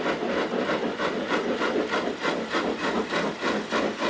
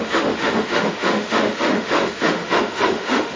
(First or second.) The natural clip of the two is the first